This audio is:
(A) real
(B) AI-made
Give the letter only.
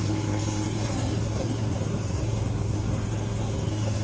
B